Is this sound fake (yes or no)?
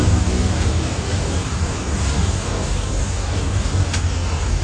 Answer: yes